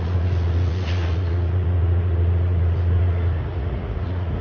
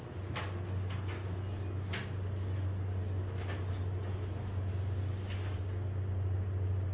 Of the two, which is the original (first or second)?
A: second